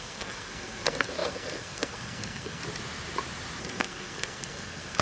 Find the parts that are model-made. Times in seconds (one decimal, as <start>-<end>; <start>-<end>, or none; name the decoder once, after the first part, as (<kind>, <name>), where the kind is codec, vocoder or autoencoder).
0.0-2.6 (codec, SNAC); 3.6-5.0